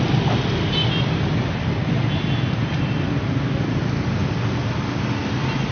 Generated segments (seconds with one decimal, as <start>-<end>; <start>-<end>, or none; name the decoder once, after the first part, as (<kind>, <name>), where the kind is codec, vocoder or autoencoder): none